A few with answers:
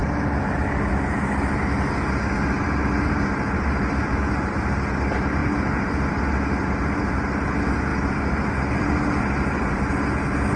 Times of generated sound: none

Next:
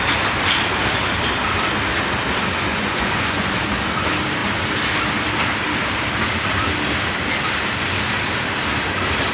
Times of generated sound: 2.7-3.5 (vocoder, Vocos)

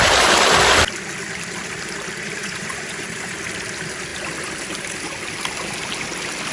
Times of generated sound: 2.4-3.4 (vocoder, Vocos)